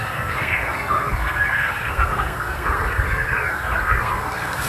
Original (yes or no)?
no